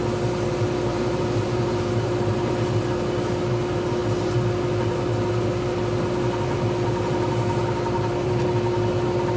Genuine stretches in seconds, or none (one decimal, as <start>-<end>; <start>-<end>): 0.0-0.9; 2.7-7.6; 8.5-9.4